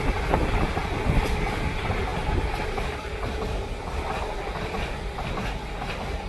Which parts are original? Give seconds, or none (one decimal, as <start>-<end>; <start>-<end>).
0.0-0.8; 1.3-2.1